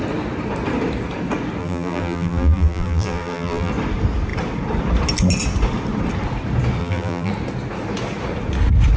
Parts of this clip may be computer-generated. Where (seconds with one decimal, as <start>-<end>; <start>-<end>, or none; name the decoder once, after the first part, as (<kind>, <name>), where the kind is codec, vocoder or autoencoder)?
1.6-3.7 (vocoder, BigVGAN v2); 6.8-7.3